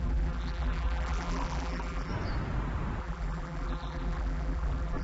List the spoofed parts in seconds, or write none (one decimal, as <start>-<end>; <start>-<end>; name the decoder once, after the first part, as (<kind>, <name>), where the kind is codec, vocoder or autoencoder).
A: 0.0-2.1 (vocoder, BigVGAN v2); 3.0-5.0